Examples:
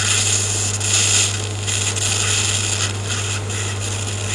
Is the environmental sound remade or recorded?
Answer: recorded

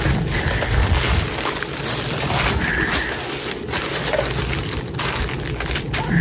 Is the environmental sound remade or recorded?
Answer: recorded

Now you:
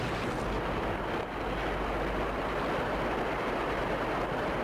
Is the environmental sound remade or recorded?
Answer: recorded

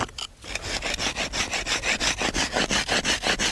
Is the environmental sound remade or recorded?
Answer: recorded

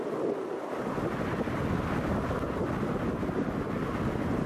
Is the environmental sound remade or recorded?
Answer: recorded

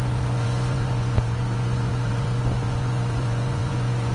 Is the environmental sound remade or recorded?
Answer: remade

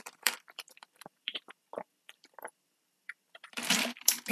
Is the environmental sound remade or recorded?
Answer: remade